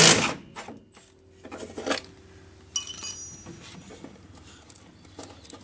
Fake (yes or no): no